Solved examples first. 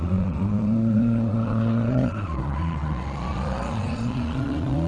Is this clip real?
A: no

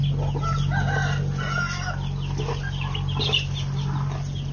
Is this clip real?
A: yes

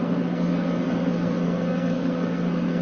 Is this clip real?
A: no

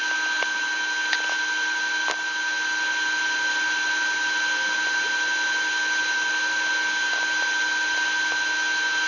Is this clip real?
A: yes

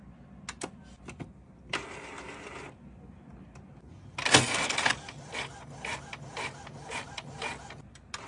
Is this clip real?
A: yes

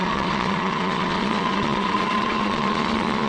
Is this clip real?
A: no